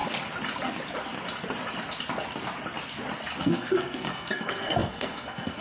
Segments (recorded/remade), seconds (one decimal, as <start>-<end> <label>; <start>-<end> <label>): 0.0-3.4 recorded; 3.4-5.6 remade